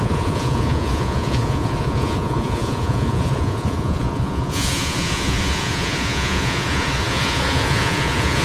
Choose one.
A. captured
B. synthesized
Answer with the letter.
B